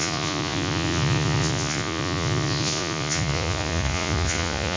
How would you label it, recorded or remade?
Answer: remade